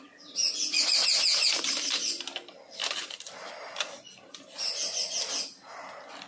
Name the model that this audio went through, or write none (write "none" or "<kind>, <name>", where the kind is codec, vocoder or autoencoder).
none